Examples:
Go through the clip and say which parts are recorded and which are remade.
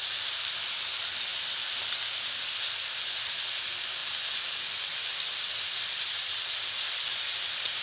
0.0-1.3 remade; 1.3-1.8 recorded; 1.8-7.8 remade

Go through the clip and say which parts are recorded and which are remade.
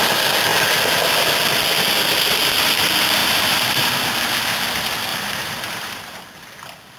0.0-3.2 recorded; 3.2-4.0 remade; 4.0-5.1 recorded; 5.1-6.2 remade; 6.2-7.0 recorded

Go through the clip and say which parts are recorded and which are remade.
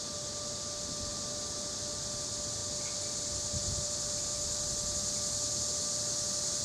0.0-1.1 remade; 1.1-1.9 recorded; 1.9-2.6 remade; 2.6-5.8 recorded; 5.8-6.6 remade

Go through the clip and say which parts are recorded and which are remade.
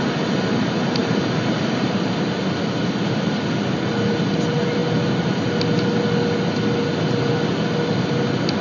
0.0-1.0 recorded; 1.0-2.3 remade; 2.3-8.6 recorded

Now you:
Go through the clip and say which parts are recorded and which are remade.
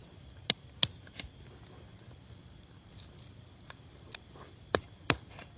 0.0-0.8 remade; 0.8-1.9 recorded; 1.9-5.6 remade